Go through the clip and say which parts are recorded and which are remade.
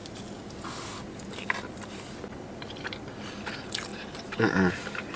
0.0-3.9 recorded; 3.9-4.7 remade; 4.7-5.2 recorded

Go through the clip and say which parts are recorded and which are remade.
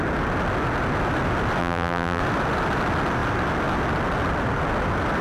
0.0-1.6 recorded; 1.6-2.2 remade; 2.2-5.2 recorded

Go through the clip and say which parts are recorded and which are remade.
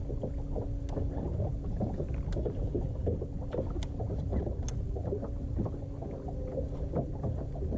0.0-7.8 recorded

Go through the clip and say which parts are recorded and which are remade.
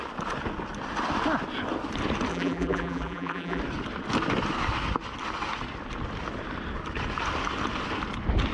0.0-2.3 recorded; 2.3-3.6 remade; 3.6-8.5 recorded